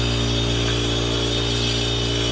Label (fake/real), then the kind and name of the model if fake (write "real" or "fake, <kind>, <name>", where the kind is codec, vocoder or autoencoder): real